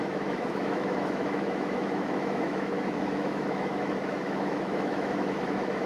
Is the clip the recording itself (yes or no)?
no